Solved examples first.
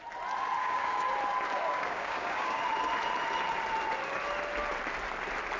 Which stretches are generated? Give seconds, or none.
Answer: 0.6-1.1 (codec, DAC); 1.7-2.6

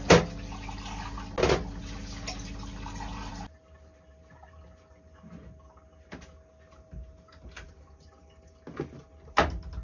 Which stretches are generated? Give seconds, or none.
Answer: none